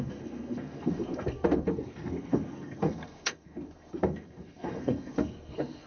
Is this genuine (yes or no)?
no